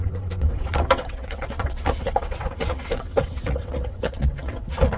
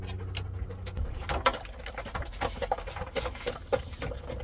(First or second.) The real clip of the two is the second